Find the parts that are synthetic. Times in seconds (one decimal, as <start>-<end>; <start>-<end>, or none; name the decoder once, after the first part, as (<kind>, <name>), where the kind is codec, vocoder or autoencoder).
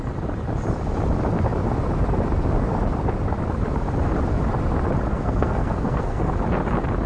5.1-6.2 (codec, SNAC)